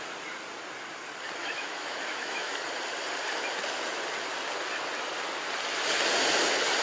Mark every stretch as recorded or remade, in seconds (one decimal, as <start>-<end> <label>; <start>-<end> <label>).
0.0-1.4 recorded; 1.4-2.6 remade; 2.6-6.8 recorded